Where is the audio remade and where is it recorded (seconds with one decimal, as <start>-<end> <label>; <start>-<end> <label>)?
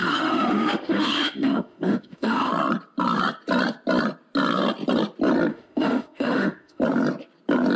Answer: 0.0-2.5 remade; 2.5-5.5 recorded; 5.5-6.8 remade; 6.8-7.8 recorded